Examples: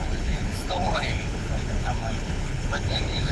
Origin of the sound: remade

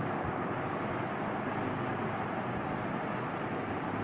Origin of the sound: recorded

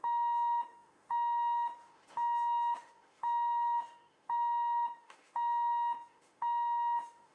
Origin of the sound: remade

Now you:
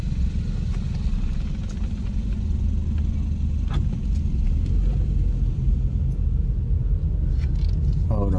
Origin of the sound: recorded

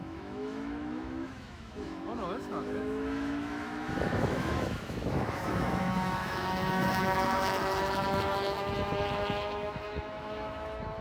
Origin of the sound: remade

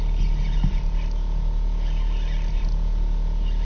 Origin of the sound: recorded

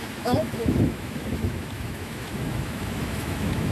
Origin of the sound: remade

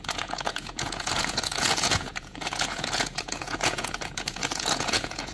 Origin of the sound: remade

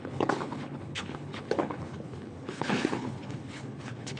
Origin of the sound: remade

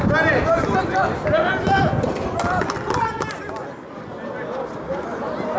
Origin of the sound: recorded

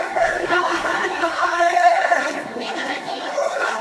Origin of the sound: remade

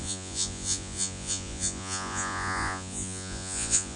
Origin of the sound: remade